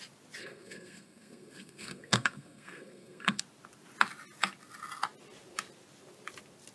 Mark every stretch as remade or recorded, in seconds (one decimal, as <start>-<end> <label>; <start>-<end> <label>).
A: 0.0-0.4 recorded; 0.4-3.4 remade; 3.4-6.7 recorded

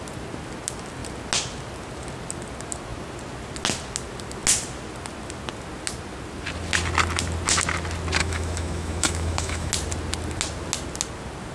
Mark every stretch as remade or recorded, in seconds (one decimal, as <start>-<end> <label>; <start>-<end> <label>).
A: 0.0-8.2 recorded; 8.2-9.7 remade; 9.7-11.5 recorded